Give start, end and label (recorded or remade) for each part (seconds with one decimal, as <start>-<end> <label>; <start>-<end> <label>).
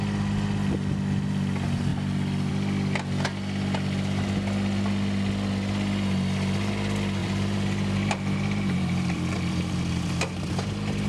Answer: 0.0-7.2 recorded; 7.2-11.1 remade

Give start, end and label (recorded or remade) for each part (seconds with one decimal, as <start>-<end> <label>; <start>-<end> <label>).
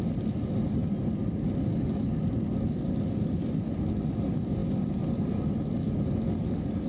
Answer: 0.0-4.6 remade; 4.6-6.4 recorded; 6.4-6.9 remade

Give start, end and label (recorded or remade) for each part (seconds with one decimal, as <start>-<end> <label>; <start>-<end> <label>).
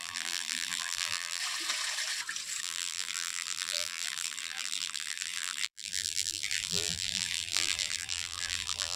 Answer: 0.0-1.4 remade; 1.4-2.6 recorded; 2.6-9.0 remade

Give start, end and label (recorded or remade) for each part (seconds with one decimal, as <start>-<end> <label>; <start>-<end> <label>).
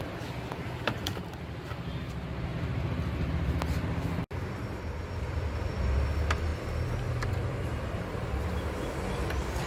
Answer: 0.0-6.5 recorded; 6.5-8.0 remade; 8.0-9.7 recorded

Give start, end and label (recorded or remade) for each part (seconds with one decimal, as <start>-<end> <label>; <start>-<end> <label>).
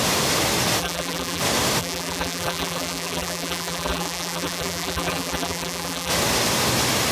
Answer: 0.0-0.8 recorded; 0.8-1.4 remade; 1.4-1.8 recorded; 1.8-6.1 remade; 6.1-7.1 recorded